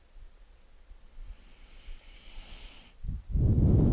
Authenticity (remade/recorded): recorded